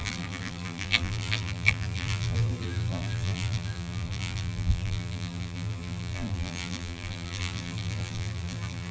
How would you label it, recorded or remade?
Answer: remade